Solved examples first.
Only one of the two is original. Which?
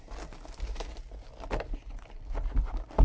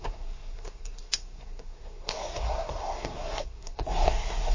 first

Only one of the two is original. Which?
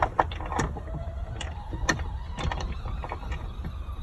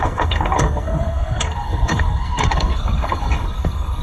first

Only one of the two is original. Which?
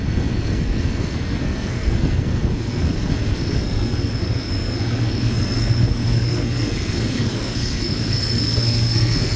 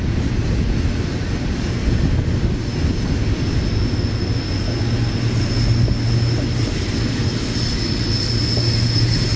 second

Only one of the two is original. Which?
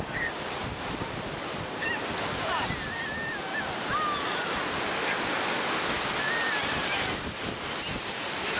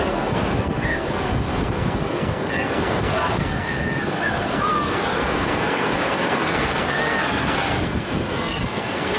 first